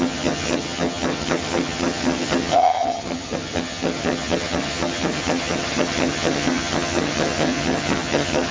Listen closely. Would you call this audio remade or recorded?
remade